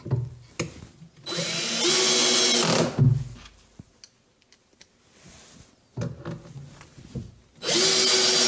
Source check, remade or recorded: recorded